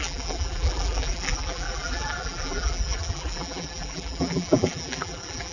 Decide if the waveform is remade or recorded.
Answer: remade